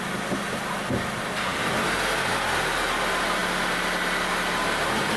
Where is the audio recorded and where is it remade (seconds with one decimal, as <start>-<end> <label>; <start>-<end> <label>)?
0.0-5.2 recorded

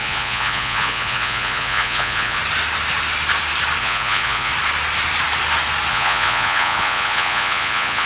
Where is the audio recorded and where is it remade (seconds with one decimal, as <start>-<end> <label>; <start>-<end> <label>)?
0.0-2.4 remade; 2.4-3.8 recorded; 3.8-4.5 remade; 4.5-5.9 recorded; 5.9-8.1 remade

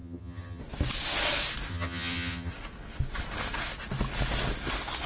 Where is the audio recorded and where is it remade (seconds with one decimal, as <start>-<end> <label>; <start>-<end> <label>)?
0.0-0.6 remade; 0.6-1.7 recorded; 1.7-2.5 remade; 2.5-5.1 recorded

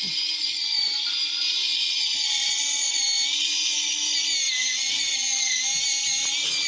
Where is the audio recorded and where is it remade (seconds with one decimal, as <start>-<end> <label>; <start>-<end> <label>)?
0.0-1.8 recorded; 1.8-2.6 remade; 2.6-4.6 recorded; 4.6-5.6 remade; 5.6-6.7 recorded